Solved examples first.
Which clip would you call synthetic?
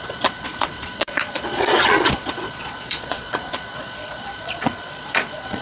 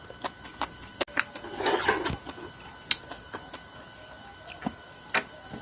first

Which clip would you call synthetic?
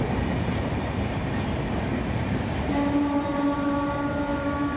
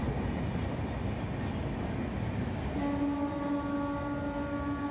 first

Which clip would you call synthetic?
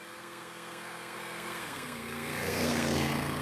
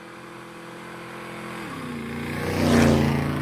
first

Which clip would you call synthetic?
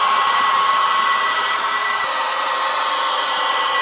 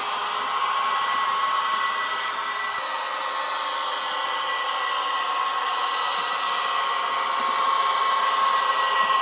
first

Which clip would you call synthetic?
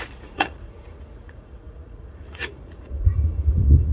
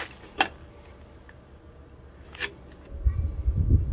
first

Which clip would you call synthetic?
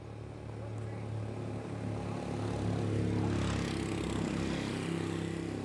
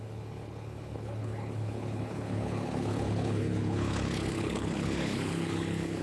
second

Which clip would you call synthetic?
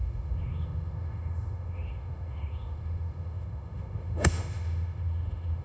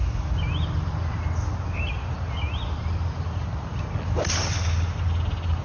first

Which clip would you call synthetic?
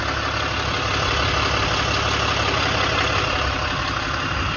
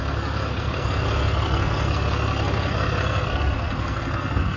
second